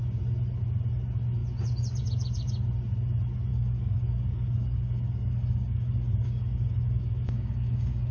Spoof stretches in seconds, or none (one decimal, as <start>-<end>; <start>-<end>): 3.5-8.1